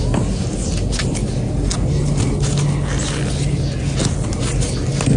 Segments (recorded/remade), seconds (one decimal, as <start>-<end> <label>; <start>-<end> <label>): 0.0-5.2 recorded